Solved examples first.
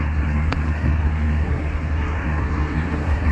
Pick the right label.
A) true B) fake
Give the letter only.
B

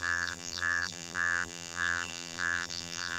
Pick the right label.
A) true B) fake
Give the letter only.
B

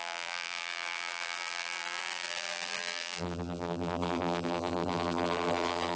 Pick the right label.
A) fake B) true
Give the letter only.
A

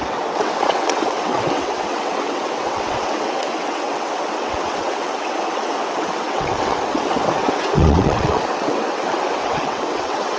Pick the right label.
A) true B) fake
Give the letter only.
B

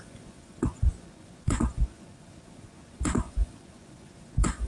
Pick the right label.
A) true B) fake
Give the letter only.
B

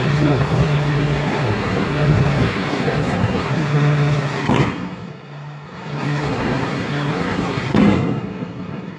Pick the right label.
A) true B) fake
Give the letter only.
B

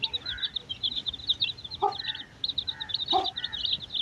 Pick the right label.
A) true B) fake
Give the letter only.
A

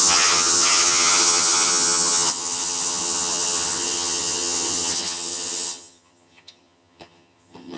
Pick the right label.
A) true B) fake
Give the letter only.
B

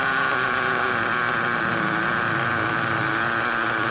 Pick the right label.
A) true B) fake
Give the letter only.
A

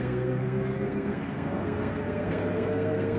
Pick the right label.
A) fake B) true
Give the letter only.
A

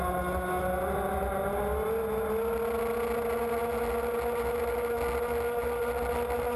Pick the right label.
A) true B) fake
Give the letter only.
A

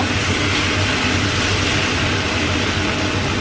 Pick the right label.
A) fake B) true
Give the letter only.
B